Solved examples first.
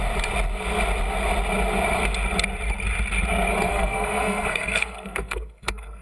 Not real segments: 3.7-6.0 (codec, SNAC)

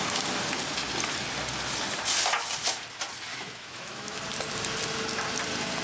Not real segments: 3.3-4.2 (autoencoder, DAC-VAE)

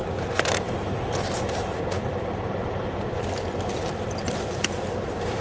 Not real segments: 0.0-3.2 (vocoder, BigVGAN v2)

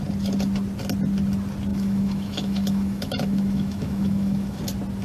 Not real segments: 1.7-4.6 (autoencoder, DAC-VAE)

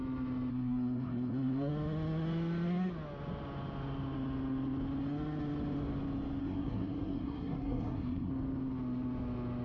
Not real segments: 0.5-1.7 (codec, SNAC); 6.4-8.3

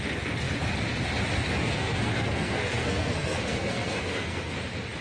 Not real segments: 1.6-4.6 (codec, SNAC)